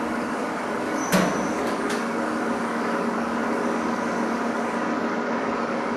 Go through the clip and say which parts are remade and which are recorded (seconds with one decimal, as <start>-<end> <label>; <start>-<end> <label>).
0.0-1.0 remade; 1.0-1.5 recorded; 1.5-6.0 remade